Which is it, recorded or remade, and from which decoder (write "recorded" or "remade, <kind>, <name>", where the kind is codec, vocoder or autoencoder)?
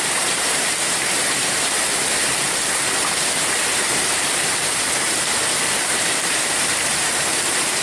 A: remade, vocoder, BigVGAN v2